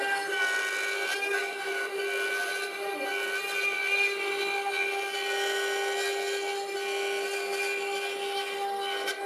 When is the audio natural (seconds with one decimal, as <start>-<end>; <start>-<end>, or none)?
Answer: 0.0-1.4; 2.0-9.3